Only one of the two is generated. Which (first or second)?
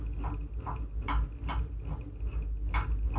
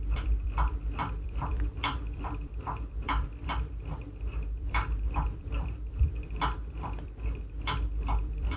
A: second